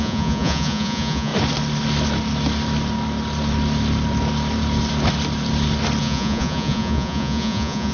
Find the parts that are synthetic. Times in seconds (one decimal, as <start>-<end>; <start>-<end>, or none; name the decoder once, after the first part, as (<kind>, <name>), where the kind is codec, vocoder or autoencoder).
0.0-1.3 (vocoder, Vocos); 6.0-7.9